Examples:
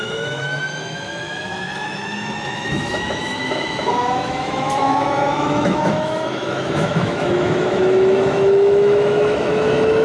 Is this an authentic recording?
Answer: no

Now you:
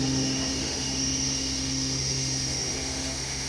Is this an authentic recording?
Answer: no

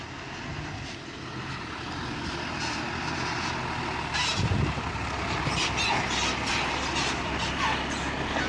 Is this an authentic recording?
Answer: yes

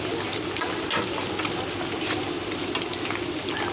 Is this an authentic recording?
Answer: yes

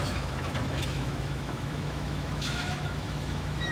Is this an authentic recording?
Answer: no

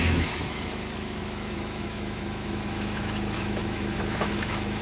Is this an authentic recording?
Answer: no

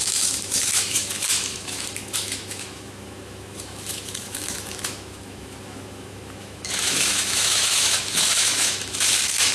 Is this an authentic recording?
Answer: no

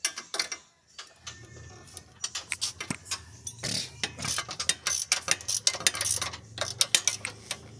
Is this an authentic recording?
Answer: yes